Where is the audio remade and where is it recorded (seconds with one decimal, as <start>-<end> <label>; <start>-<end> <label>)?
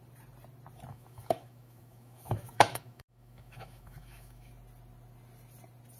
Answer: 0.0-0.9 recorded; 0.9-4.5 remade; 4.5-6.0 recorded